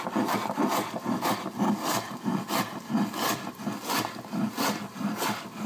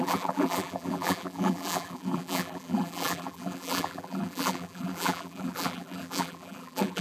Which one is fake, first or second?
second